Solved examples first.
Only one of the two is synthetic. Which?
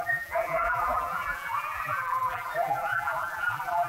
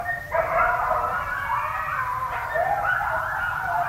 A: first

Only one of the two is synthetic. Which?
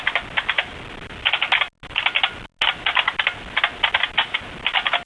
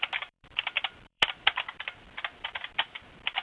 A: second